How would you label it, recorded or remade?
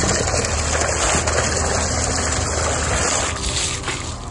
recorded